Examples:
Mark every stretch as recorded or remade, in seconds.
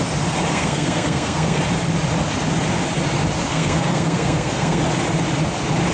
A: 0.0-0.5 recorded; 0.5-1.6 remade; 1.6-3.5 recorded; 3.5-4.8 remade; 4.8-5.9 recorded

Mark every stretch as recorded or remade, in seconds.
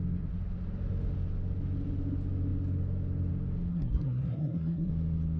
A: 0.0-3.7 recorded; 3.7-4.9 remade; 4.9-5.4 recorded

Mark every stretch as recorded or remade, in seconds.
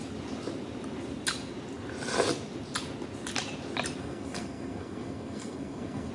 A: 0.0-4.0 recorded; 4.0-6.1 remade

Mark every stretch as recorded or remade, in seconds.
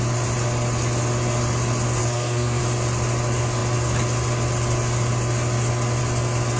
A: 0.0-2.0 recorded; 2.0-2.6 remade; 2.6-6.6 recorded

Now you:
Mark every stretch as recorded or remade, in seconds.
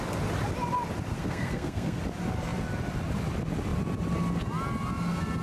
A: 0.0-1.1 recorded; 1.1-2.0 remade; 2.0-5.4 recorded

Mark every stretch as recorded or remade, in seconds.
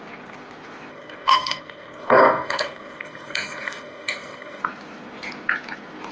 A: 0.0-0.9 recorded; 0.9-4.6 remade; 4.6-6.1 recorded